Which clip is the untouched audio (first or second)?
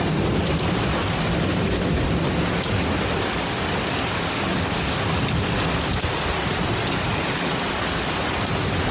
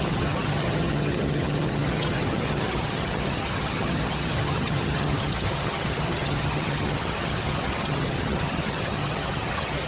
first